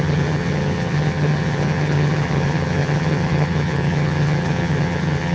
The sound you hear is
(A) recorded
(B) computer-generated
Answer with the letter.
B